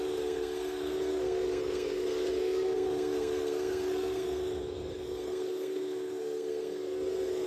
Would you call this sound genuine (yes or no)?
no